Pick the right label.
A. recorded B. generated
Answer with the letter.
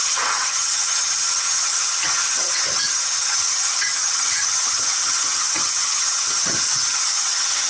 B